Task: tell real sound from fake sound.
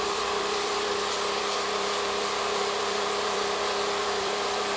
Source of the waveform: fake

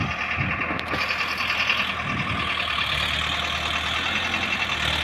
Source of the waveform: real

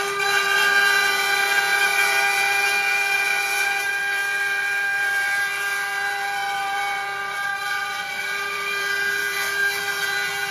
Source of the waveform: fake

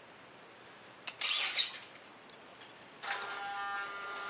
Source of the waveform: real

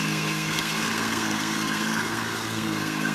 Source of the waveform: fake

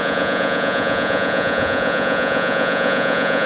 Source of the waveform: fake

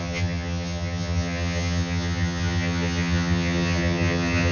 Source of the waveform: fake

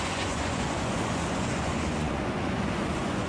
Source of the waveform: fake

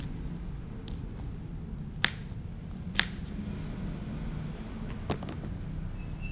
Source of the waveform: real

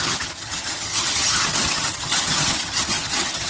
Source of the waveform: fake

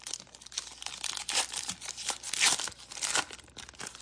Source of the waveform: real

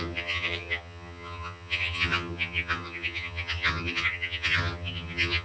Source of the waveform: fake